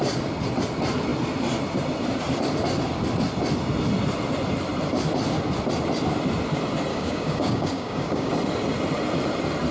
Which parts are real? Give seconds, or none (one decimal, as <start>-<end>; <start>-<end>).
0.0-6.9; 8.3-9.7